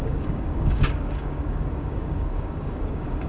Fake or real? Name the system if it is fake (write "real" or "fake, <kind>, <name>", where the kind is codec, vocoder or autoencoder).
fake, codec, DAC